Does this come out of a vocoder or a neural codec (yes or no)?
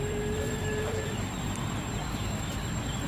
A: yes